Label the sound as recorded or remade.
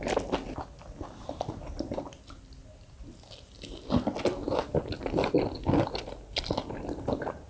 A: recorded